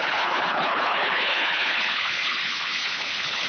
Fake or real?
fake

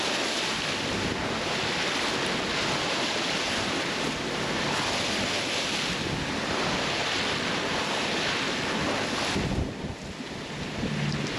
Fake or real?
real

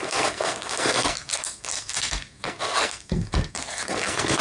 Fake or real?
fake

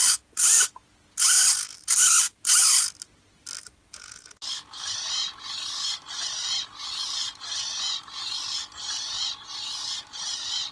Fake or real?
real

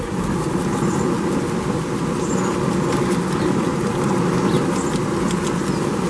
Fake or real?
real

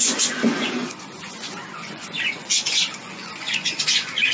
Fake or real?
fake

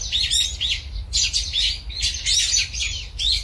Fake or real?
real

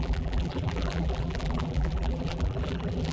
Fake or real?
fake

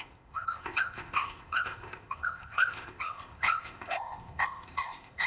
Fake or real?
fake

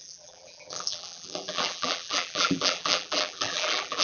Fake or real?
fake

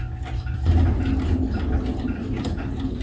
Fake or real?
real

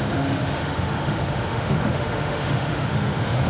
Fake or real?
fake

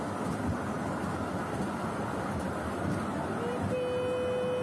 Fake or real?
real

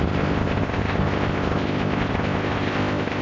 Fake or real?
fake